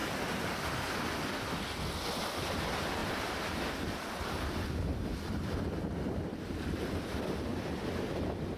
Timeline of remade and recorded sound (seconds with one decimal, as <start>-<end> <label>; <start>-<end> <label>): 0.0-2.2 recorded; 2.2-7.5 remade; 7.5-8.1 recorded; 8.1-8.6 remade